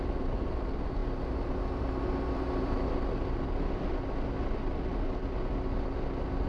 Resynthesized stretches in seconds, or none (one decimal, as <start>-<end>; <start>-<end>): none